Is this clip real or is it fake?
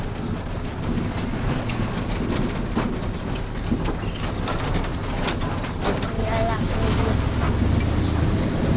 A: real